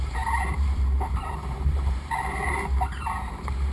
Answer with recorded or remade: remade